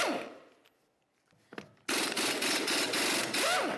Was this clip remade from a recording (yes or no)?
no